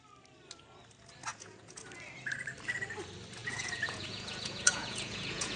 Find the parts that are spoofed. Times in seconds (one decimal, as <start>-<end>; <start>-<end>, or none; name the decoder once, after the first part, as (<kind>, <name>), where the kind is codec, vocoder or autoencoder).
1.3-1.8 (vocoder, Vocos); 3.4-5.6